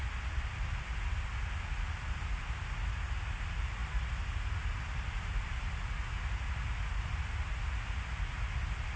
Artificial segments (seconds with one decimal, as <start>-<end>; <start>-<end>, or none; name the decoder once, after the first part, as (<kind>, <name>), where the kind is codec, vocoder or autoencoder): none